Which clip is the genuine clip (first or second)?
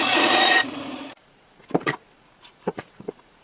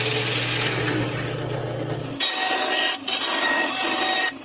second